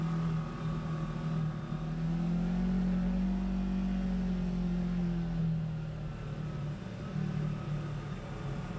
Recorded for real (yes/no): yes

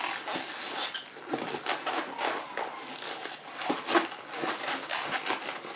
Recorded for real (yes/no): yes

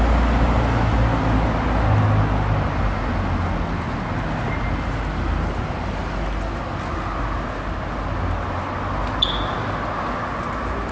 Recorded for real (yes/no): yes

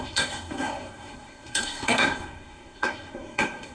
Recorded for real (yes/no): no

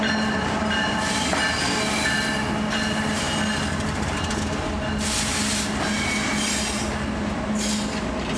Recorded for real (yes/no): yes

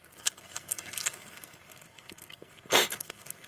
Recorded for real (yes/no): no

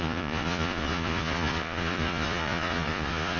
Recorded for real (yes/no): no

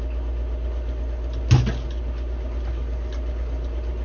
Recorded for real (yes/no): yes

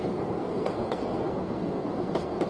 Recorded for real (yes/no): no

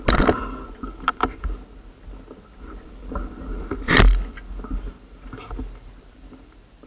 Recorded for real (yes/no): yes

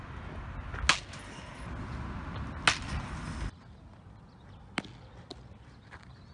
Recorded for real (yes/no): yes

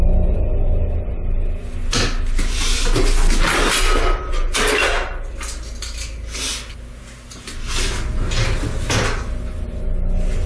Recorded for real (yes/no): yes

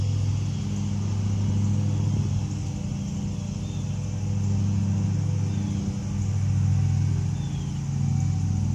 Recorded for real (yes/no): yes